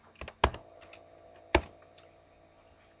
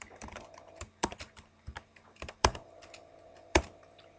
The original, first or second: first